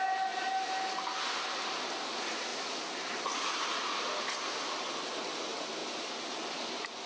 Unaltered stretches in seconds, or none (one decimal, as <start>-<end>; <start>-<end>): 0.0-7.1